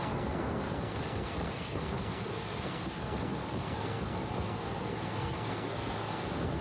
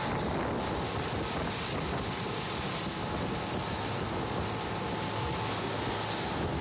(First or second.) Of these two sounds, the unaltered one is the second